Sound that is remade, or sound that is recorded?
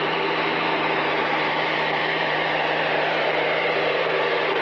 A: remade